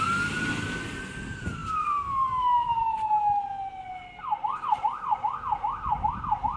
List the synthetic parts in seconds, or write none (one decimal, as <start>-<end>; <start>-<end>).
none